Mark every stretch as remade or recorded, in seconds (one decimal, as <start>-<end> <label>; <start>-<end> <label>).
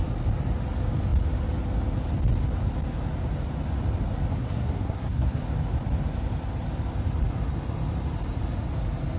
0.0-4.3 recorded; 4.3-5.4 remade; 5.4-9.2 recorded